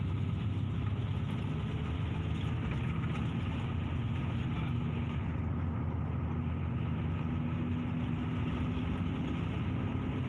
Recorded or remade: recorded